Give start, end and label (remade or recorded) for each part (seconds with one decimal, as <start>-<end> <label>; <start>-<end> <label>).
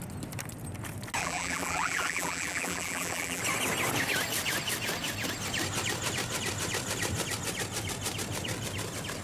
0.0-1.2 recorded; 1.2-3.4 remade; 3.4-9.2 recorded